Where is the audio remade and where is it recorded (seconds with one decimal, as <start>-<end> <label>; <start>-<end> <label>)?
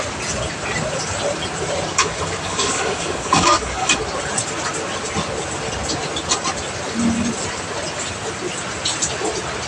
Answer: 0.0-1.9 recorded; 1.9-4.0 remade; 4.0-9.7 recorded